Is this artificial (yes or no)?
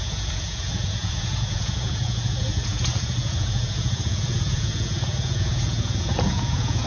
yes